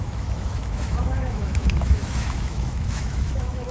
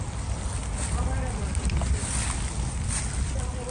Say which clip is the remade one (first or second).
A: first